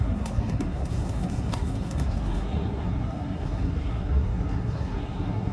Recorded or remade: remade